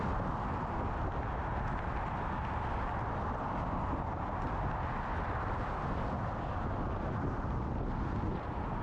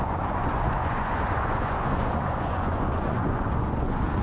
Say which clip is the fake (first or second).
second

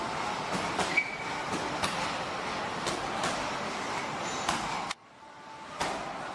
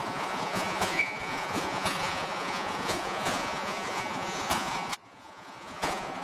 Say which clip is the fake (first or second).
second